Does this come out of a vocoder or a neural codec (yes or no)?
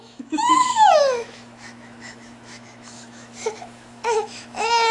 yes